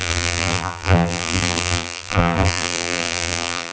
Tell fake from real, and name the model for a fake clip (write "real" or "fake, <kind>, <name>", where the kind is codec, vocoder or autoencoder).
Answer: fake, vocoder, BigVGAN v2